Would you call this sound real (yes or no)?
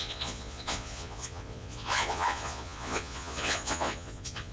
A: no